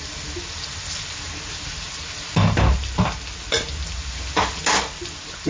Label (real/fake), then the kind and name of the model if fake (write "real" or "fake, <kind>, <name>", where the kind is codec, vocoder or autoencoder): real